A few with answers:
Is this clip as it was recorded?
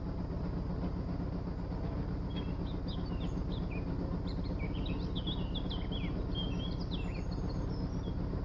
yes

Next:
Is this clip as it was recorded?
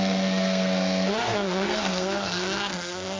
no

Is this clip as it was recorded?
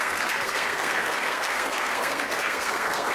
no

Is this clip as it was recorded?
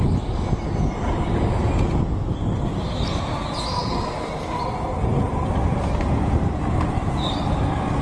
yes